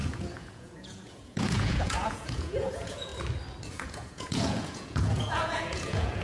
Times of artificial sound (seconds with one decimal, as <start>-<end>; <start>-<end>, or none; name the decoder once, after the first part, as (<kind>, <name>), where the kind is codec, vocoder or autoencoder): 0.0-3.1 (vocoder, Vocos); 3.7-6.2